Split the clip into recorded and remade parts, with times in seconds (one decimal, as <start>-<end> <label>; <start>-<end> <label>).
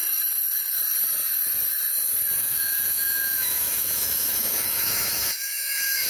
0.0-2.4 recorded; 2.4-6.1 remade